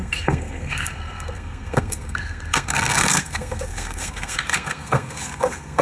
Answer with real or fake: fake